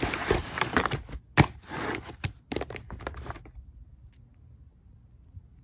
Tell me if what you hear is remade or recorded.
recorded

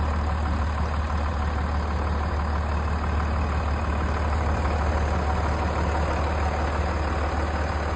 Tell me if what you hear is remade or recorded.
recorded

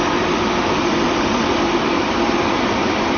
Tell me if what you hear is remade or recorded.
remade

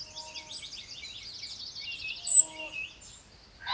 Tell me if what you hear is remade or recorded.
recorded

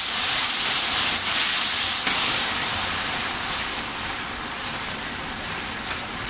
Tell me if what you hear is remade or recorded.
recorded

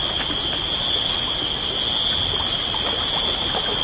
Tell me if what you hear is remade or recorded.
recorded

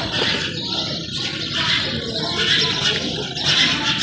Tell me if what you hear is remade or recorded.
recorded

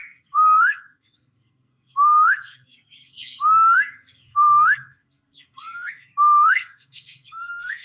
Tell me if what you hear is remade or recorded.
remade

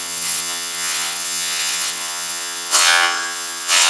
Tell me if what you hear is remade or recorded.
remade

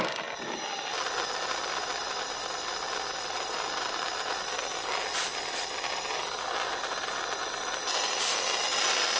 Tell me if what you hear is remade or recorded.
recorded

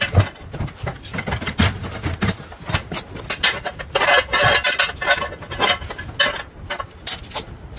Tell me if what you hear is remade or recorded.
recorded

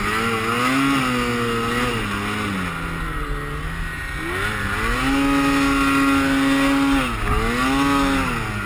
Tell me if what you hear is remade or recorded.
recorded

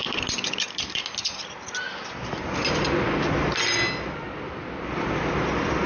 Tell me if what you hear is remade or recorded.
recorded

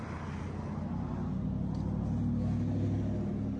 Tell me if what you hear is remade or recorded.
recorded